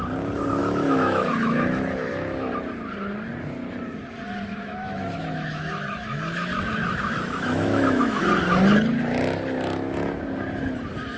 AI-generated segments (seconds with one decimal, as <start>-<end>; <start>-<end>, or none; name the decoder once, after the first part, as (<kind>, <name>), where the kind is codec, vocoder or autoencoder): 0.6-2.5 (autoencoder, DAC-VAE); 4.5-8.2